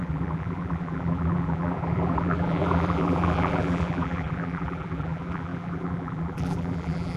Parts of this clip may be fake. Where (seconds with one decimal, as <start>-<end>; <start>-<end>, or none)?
0.0-7.2